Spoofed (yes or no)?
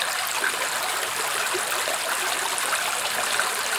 no